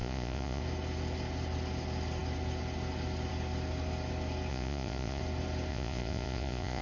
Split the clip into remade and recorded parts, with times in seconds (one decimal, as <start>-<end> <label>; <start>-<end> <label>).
0.0-0.6 remade; 0.6-4.5 recorded; 4.5-5.2 remade; 5.2-5.7 recorded; 5.7-6.8 remade